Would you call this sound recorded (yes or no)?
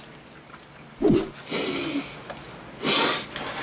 yes